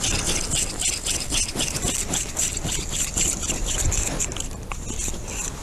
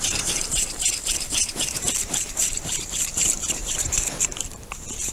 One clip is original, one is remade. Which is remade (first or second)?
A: second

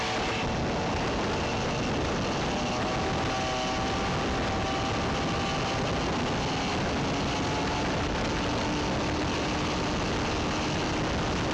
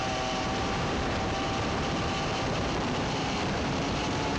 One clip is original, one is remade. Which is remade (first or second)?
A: second